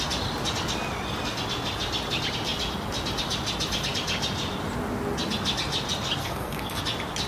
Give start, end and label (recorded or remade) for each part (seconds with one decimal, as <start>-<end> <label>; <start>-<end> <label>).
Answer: 0.0-6.2 recorded; 6.2-6.8 remade; 6.8-7.3 recorded